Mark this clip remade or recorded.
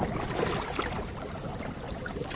recorded